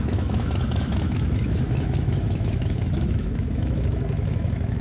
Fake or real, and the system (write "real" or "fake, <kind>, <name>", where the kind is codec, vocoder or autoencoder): fake, autoencoder, DAC-VAE